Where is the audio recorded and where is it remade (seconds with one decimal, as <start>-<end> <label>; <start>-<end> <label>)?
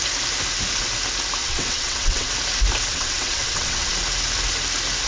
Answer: 0.0-1.4 recorded; 1.4-2.3 remade; 2.3-2.9 recorded; 2.9-3.9 remade; 3.9-5.1 recorded